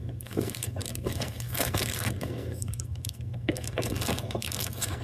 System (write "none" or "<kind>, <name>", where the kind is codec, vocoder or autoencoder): codec, SNAC